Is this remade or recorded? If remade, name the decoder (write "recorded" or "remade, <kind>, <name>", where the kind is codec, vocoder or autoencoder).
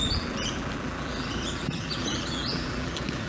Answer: remade, vocoder, BigVGAN v2